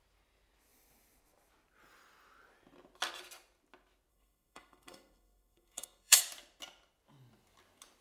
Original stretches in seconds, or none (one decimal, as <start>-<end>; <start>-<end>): 0.0-4.1; 6.2-8.0